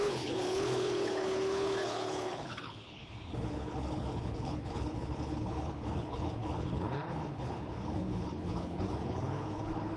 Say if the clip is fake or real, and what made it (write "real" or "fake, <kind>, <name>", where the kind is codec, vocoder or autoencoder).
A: fake, codec, HILCodec